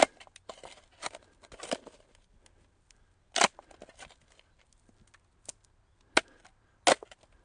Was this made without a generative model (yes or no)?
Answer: yes